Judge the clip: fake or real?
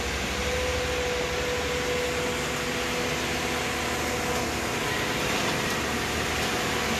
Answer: real